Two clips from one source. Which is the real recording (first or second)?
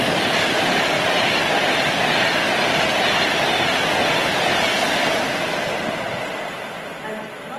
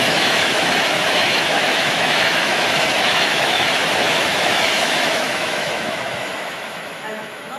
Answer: first